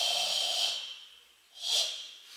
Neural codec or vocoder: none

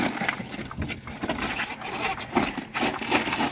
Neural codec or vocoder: none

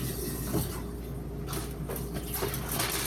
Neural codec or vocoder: none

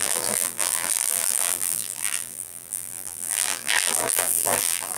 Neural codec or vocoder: vocoder, BigVGAN v2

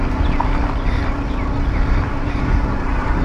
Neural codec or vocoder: none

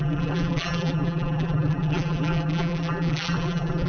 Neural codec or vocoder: vocoder, BigVGAN v2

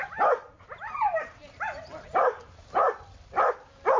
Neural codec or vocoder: vocoder, BigVGAN v2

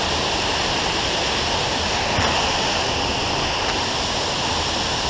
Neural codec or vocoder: none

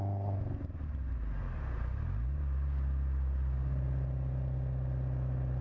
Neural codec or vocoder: none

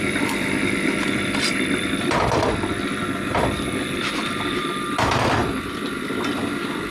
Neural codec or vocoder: vocoder, BigVGAN v2